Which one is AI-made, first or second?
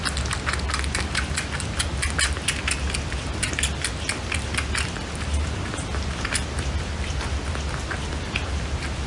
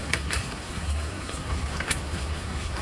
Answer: second